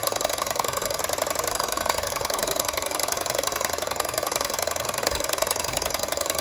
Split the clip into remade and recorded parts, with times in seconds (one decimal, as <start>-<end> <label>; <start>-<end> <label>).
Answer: 0.0-1.0 remade; 1.0-1.5 recorded; 1.5-6.4 remade